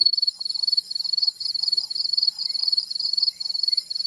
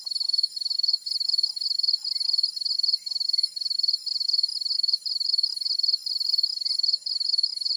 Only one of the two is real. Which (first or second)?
second